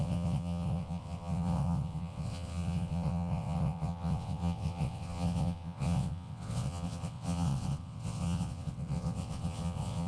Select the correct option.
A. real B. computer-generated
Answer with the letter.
B